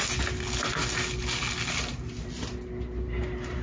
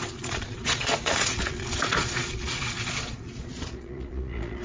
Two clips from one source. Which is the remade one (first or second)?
second